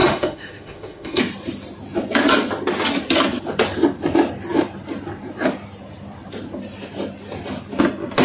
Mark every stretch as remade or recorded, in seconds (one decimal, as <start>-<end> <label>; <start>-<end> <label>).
0.0-1.2 remade; 1.2-8.2 recorded